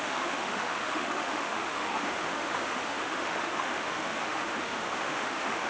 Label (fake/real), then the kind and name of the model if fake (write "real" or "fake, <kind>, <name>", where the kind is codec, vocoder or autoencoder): fake, autoencoder, DAC-VAE